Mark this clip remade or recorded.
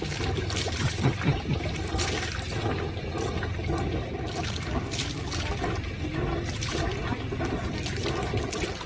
recorded